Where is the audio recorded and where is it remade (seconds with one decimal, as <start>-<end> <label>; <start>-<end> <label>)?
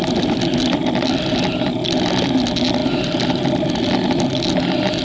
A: 0.0-5.0 recorded